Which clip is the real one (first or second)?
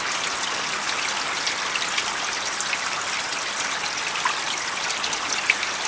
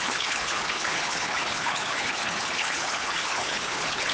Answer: first